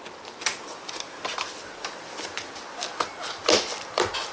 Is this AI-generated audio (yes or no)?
yes